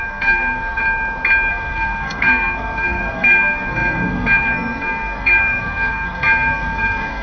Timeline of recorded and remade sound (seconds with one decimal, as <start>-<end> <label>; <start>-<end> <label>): 0.0-0.8 remade; 0.8-1.5 recorded; 1.5-7.2 remade